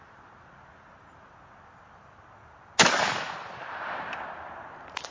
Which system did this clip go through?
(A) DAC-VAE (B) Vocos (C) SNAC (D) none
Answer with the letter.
D